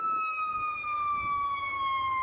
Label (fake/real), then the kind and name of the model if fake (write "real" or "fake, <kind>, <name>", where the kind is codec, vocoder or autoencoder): real